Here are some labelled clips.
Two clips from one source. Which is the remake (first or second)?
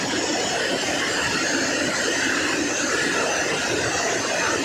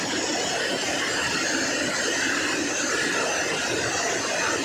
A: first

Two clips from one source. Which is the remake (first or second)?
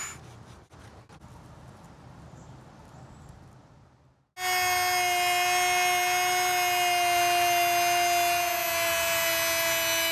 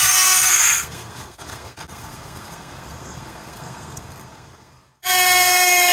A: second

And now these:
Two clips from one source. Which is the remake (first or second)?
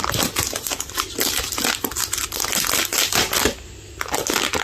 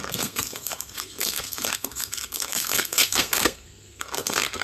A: second